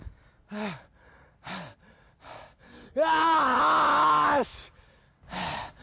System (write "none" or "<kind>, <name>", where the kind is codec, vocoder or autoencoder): none